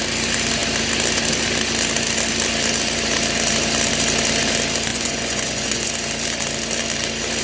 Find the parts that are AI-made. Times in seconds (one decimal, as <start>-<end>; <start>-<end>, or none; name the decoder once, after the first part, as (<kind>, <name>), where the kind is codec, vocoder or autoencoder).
4.9-5.9 (vocoder, Vocos)